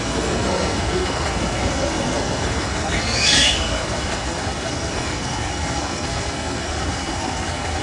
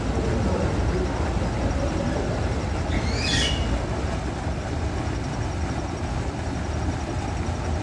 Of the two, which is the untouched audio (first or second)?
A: second